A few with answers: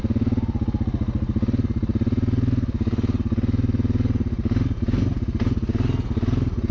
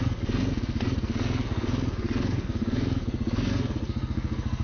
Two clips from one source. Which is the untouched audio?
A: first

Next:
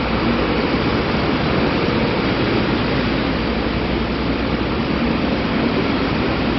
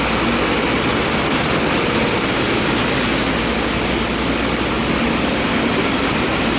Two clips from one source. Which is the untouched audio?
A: second